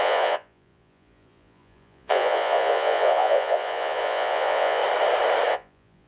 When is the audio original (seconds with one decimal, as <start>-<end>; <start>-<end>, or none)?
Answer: 4.8-5.5